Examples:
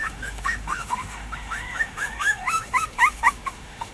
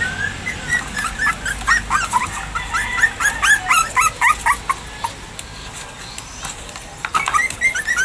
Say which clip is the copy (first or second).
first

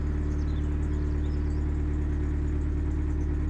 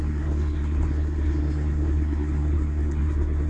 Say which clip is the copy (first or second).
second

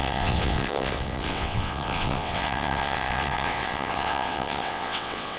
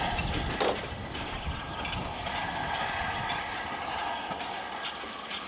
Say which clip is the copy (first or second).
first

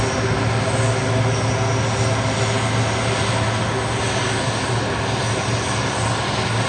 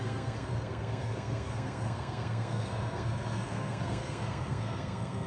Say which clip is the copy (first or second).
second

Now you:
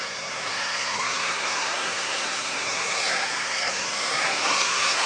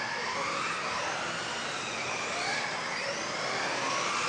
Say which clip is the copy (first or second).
first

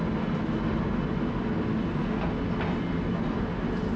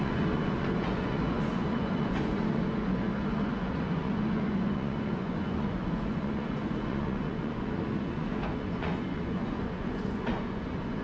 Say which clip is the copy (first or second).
second